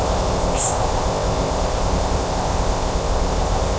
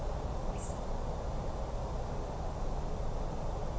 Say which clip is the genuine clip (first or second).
second